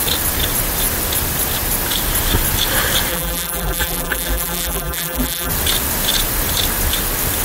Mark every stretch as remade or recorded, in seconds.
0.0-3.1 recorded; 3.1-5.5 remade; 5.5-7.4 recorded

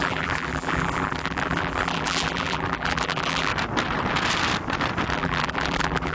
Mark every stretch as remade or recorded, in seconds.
0.0-3.5 remade; 3.5-5.1 recorded; 5.1-6.1 remade

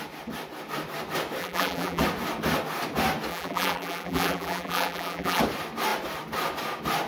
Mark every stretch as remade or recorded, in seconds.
0.0-1.4 recorded; 1.4-2.0 remade; 2.0-3.3 recorded; 3.3-5.4 remade; 5.4-7.1 recorded

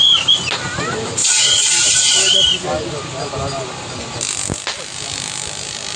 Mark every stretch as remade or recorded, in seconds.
0.0-6.0 recorded

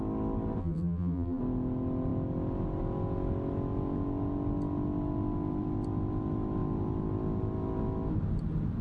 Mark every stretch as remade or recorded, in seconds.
0.0-0.6 recorded; 0.6-1.4 remade; 1.4-8.8 recorded

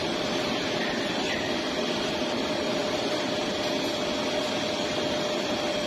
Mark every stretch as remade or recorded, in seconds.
0.0-2.8 remade; 2.8-4.4 recorded; 4.4-5.9 remade

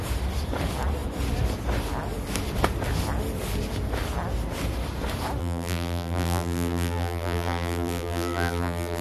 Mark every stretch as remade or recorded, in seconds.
0.0-5.4 recorded; 5.4-9.0 remade